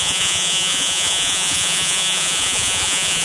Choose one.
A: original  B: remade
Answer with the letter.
B